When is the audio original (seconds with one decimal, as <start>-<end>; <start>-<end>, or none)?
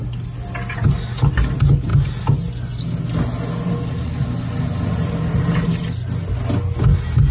0.0-7.3